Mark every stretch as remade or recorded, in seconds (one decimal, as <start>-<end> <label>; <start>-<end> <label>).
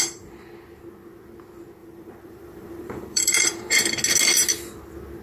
0.0-1.8 recorded; 1.8-3.8 remade; 3.8-5.2 recorded